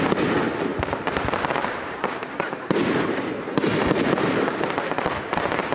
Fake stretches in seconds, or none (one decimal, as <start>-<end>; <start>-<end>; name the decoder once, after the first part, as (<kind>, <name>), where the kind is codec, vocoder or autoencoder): 0.7-1.2 (vocoder, BigVGAN v2); 1.6-4.4